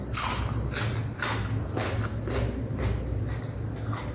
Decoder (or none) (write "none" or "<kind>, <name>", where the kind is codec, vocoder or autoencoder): none